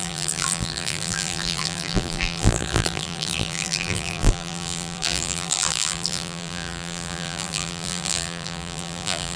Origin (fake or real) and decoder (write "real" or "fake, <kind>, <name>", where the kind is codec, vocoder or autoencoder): fake, vocoder, BigVGAN v2